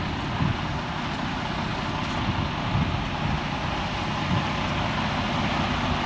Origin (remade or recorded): recorded